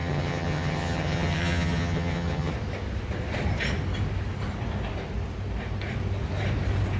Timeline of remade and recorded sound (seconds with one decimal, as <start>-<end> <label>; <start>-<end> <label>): 0.0-2.5 remade; 2.5-7.0 recorded